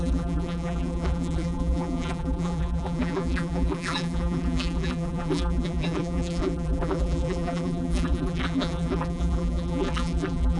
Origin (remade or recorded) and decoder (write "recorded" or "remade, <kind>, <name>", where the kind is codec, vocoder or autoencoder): remade, vocoder, BigVGAN v2